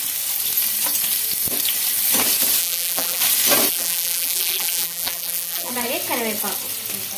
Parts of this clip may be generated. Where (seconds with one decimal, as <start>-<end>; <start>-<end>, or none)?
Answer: 2.6-3.2; 3.7-5.7